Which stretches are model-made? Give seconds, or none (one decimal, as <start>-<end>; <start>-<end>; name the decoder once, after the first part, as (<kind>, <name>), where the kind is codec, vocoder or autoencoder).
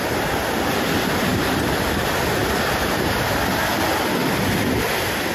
2.4-3.5 (vocoder, BigVGAN v2)